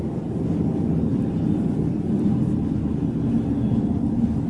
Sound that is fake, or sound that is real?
fake